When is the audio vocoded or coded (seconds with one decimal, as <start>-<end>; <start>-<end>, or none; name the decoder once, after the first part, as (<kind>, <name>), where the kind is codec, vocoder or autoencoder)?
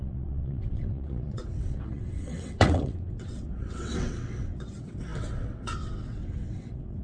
0.0-7.0 (vocoder, WaveNeXt)